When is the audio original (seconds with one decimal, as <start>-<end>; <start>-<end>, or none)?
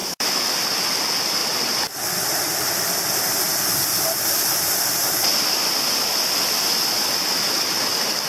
0.5-8.3